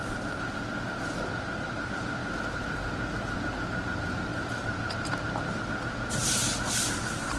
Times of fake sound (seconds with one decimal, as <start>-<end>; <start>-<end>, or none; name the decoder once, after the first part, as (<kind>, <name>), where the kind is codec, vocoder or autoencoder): none